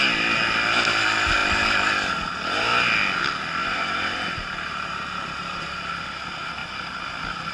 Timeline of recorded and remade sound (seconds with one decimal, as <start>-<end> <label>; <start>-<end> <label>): 0.0-3.6 recorded; 3.6-5.9 remade; 5.9-7.5 recorded

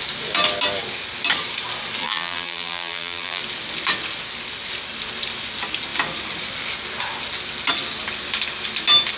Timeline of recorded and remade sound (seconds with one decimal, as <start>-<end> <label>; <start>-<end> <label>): 0.0-2.0 recorded; 2.0-3.4 remade; 3.4-9.2 recorded

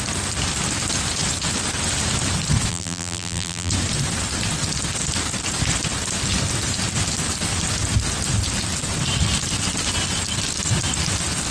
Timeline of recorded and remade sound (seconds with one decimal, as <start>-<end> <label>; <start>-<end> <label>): 0.0-2.7 recorded; 2.7-3.7 remade; 3.7-11.5 recorded